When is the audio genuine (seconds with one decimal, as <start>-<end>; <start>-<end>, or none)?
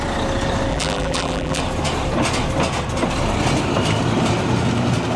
0.0-0.7; 1.6-5.2